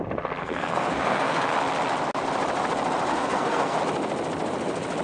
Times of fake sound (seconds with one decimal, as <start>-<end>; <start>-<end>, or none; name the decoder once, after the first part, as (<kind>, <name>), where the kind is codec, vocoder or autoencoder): 0.4-1.5 (codec, SNAC); 3.1-3.8